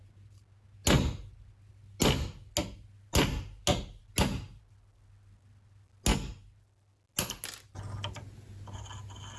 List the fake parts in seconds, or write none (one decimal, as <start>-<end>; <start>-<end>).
none